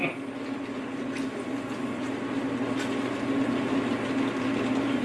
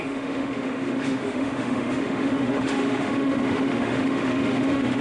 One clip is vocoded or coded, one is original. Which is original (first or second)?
first